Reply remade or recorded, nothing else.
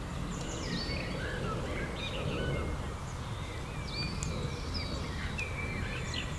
recorded